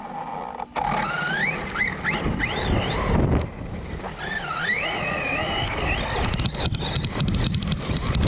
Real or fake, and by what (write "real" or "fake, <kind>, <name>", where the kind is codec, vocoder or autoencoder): real